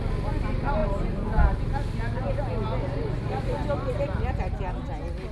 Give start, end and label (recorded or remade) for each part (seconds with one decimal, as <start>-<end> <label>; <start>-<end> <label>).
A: 0.0-5.3 recorded